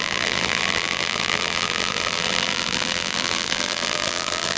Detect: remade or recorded remade